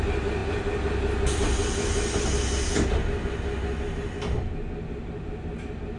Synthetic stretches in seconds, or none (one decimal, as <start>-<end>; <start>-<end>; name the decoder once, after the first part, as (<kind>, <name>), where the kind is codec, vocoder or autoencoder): none